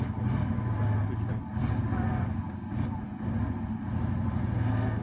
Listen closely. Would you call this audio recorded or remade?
recorded